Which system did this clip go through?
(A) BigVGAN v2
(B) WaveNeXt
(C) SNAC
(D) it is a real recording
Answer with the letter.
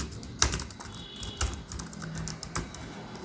D